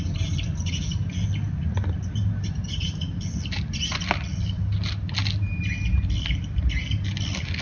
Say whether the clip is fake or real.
real